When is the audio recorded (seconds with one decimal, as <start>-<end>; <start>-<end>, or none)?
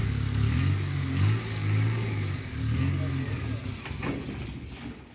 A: 3.1-5.1